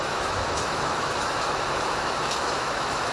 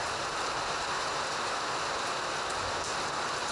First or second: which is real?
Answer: second